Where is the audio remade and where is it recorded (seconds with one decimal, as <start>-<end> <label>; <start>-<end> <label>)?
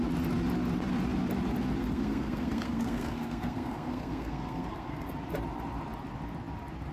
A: 0.0-1.8 recorded; 1.8-5.1 remade; 5.1-6.9 recorded